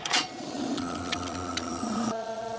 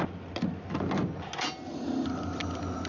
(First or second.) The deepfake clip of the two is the first